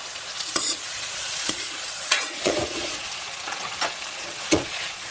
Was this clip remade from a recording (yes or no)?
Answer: yes